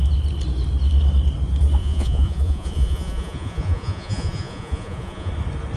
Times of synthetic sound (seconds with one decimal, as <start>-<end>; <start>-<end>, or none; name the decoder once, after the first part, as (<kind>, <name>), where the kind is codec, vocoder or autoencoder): 1.8-5.3 (vocoder, Vocos)